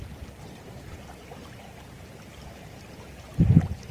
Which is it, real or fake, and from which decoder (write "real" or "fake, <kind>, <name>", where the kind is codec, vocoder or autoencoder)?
real